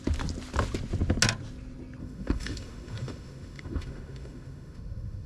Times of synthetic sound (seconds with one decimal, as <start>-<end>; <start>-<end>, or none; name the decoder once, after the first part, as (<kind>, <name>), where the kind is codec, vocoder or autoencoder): 2.0-5.3 (autoencoder, DAC-VAE)